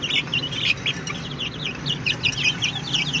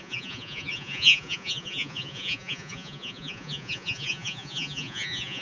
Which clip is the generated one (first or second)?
second